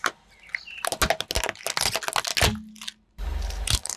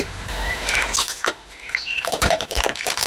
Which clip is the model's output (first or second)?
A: second